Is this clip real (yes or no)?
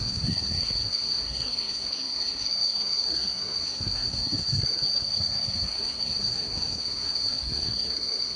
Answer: no